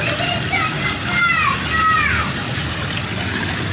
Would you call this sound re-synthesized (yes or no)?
no